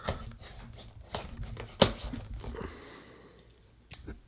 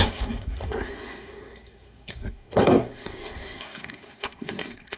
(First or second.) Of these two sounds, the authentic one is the first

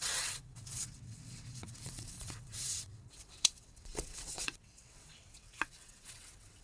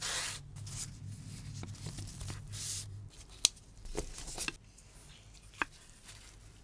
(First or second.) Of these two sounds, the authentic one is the second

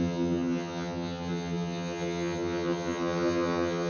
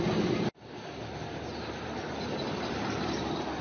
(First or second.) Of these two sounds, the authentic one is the second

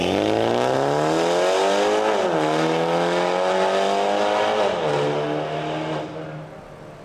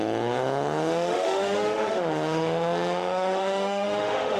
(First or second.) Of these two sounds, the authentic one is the first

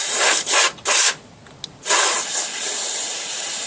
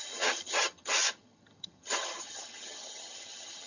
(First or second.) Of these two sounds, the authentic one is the first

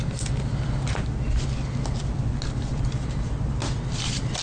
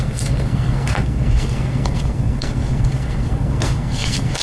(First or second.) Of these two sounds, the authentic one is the first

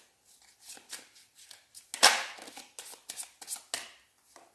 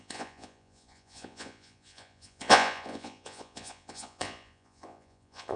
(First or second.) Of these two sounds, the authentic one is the first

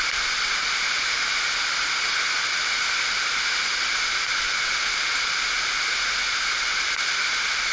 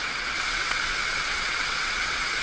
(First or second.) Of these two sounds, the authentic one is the first